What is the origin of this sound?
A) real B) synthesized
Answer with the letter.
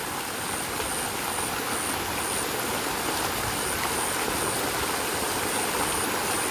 A